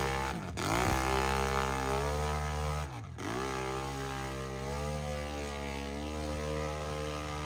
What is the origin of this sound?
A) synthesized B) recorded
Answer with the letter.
B